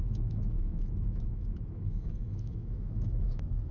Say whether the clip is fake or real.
fake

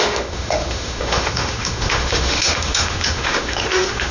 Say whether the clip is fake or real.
fake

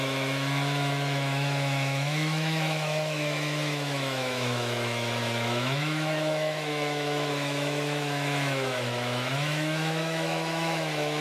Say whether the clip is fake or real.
fake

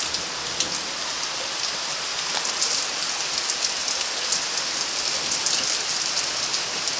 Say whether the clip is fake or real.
real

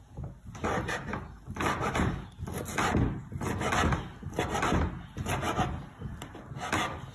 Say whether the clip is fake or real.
real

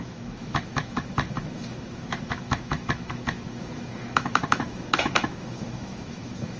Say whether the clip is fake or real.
fake